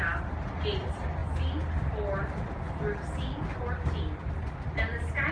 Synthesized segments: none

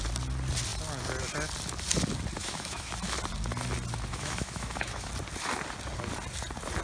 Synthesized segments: 2.4-2.9 (autoencoder, DAC-VAE); 4.1-5.1

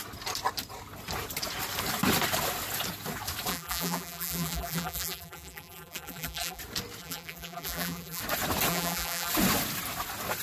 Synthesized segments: 3.5-6.6 (vocoder, BigVGAN v2); 7.0-8.2; 8.7-9.3

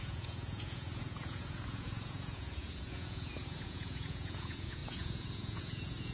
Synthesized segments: 0.0-6.1 (vocoder, Vocos)

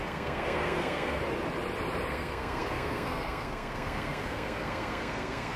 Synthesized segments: 0.0-1.2 (codec, SNAC); 2.1-5.6

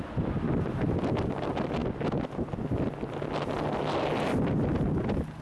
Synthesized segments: none

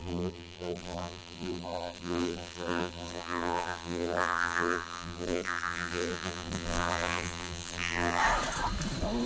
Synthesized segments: 0.0-8.2 (vocoder, BigVGAN v2)